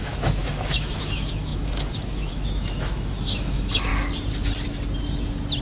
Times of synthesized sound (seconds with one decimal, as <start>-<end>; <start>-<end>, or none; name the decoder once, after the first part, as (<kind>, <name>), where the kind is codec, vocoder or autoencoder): 0.0-3.9 (autoencoder, DAC-VAE)